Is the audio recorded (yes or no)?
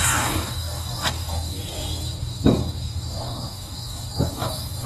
no